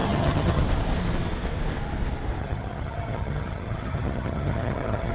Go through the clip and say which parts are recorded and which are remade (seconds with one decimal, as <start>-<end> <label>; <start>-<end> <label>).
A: 0.0-0.6 remade; 0.6-2.4 recorded; 2.4-5.1 remade

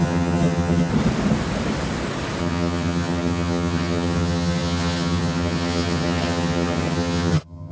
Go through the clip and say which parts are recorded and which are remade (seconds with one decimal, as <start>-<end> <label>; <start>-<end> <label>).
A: 0.0-0.9 remade; 0.9-2.4 recorded; 2.4-7.7 remade

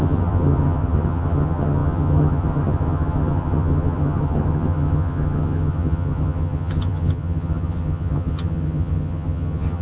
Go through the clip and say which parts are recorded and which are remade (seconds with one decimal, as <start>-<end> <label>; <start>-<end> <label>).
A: 0.0-9.8 remade

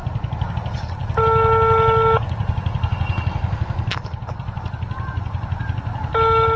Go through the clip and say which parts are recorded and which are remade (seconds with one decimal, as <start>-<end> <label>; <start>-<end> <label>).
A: 0.0-6.6 recorded

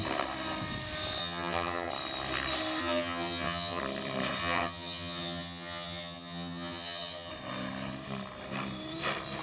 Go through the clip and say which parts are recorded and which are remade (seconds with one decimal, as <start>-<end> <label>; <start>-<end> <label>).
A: 0.0-1.2 recorded; 1.2-1.9 remade; 1.9-2.8 recorded; 2.8-3.8 remade; 3.8-4.4 recorded; 4.4-7.3 remade; 7.3-9.4 recorded

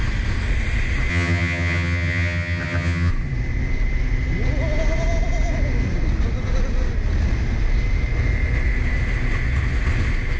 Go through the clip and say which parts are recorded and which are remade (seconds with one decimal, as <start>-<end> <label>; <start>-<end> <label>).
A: 0.0-1.1 recorded; 1.1-3.1 remade; 3.1-10.4 recorded